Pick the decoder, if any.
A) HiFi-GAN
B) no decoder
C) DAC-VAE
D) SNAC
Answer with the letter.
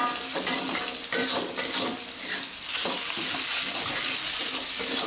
B